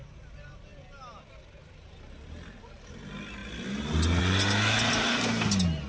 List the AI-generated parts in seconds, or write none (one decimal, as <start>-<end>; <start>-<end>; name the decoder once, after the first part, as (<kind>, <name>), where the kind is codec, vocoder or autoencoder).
none